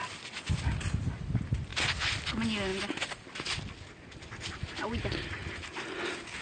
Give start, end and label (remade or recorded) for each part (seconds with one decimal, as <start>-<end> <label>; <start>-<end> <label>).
0.0-6.4 recorded